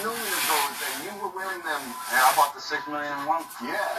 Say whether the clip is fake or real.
real